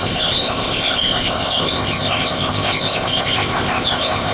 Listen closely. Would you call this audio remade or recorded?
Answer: remade